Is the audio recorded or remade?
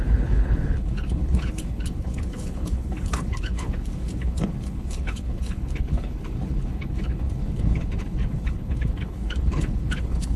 remade